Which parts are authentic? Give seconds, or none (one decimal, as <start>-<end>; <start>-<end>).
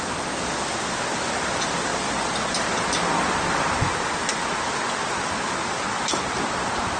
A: 0.0-7.0